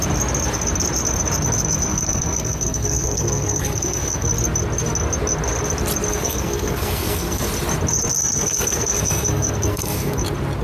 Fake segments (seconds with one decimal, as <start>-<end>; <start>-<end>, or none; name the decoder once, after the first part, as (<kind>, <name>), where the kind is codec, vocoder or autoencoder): 1.9-4.3 (codec, SNAC); 6.1-7.5; 8.2-10.2